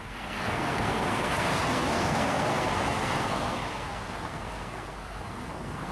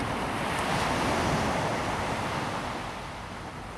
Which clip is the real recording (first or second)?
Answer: second